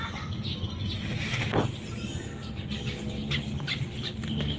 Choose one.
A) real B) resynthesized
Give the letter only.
A